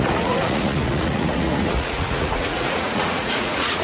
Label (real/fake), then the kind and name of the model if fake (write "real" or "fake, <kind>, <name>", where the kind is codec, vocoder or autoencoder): fake, vocoder, Vocos